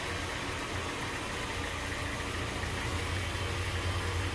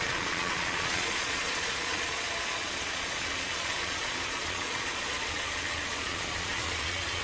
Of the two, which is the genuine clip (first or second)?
first